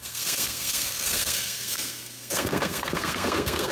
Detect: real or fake fake